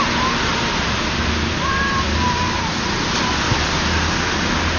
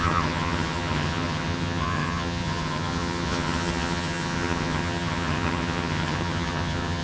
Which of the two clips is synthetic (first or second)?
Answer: second